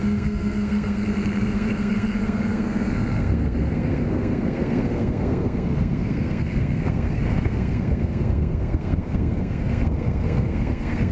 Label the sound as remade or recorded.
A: remade